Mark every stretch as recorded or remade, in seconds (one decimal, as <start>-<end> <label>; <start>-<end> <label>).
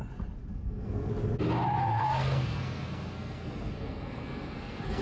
0.0-0.5 recorded; 0.5-1.1 remade; 1.1-1.8 recorded; 1.8-5.0 remade